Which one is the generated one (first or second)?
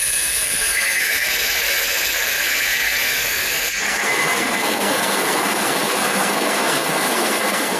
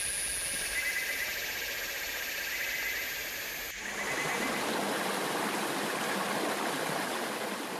first